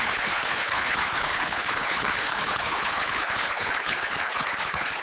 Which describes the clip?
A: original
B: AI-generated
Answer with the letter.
B